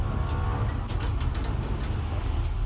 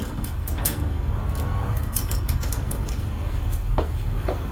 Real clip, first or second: first